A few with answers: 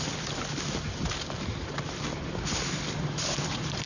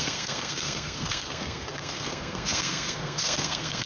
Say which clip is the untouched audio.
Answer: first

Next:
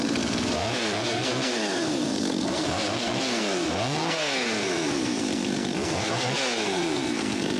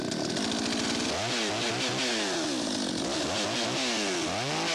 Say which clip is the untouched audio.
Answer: second